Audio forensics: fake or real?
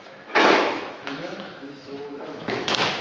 fake